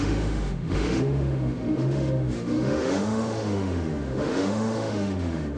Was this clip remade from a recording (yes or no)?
yes